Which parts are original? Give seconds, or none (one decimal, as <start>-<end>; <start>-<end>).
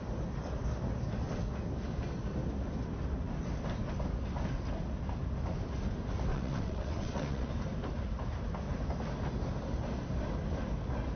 0.0-6.3; 7.5-11.2